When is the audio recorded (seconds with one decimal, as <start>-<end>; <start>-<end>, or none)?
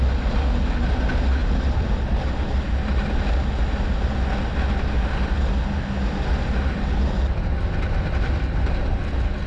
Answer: 0.0-9.5